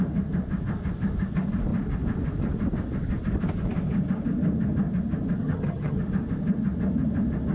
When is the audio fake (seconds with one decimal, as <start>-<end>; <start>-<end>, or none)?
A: 5.4-6.0